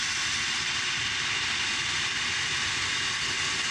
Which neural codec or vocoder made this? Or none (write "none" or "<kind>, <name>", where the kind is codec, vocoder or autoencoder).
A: none